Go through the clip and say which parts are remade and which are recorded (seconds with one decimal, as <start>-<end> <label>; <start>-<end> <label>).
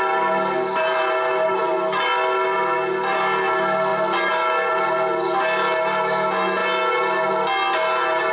0.0-8.3 recorded